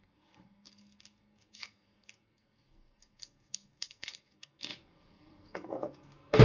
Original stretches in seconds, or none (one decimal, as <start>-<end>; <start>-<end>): none